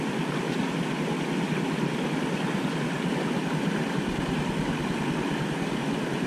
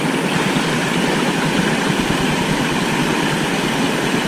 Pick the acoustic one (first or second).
first